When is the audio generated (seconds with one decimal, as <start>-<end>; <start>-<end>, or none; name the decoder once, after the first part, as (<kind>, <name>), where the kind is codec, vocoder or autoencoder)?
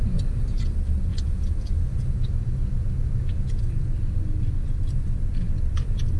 1.1-3.6 (vocoder, Vocos)